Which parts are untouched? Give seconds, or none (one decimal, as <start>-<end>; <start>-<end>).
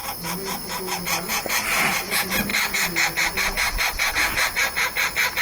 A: 0.0-1.9; 2.5-4.1